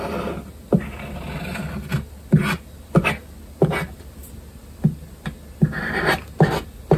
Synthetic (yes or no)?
no